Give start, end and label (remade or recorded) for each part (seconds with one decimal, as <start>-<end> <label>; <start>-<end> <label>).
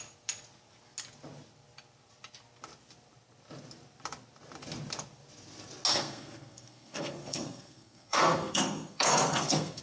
0.0-5.9 recorded; 5.9-9.8 remade